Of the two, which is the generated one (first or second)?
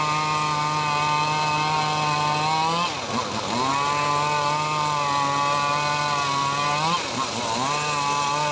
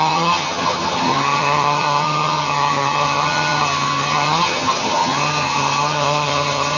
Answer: second